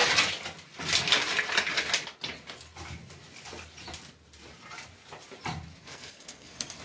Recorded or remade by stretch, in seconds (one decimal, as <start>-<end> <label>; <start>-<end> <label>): 0.0-5.8 recorded; 5.8-6.8 remade